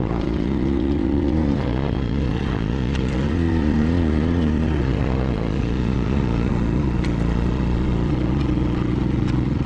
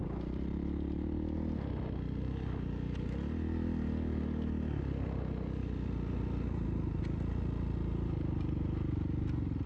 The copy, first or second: first